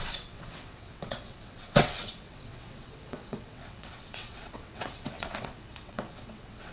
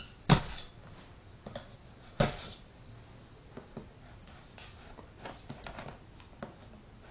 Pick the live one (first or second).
second